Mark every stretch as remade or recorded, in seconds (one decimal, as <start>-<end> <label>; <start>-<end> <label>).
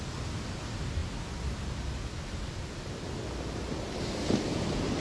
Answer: 0.0-5.0 recorded